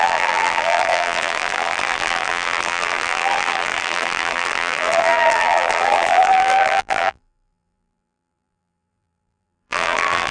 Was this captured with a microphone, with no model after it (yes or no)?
no